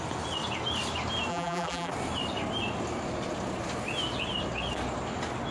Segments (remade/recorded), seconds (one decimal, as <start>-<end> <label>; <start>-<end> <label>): 0.0-1.3 recorded; 1.3-1.9 remade; 1.9-5.5 recorded